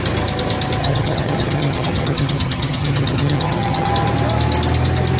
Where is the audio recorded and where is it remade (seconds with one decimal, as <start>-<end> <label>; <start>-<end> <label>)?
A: 0.0-0.8 recorded; 0.8-3.9 remade; 3.9-5.2 recorded